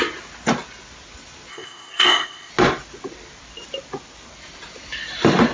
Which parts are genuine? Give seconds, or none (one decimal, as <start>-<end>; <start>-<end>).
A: 0.0-1.5; 2.5-5.5